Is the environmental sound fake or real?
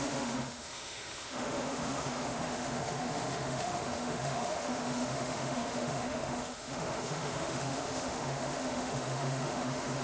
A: fake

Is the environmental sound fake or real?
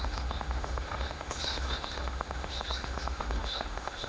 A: fake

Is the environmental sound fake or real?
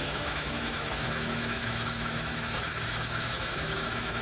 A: fake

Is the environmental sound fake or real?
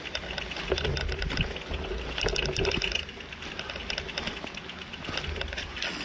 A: real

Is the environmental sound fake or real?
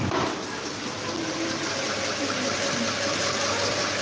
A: real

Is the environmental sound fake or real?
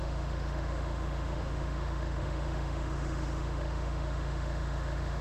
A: fake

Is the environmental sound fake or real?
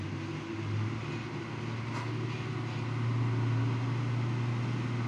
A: real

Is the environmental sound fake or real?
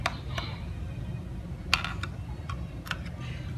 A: real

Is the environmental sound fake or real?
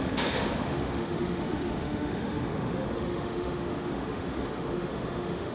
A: fake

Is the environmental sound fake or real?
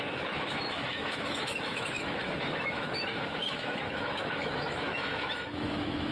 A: fake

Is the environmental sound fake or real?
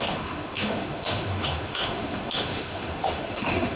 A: fake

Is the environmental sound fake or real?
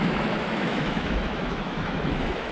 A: fake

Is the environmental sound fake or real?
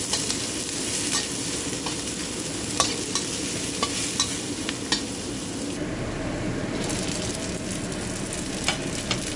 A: real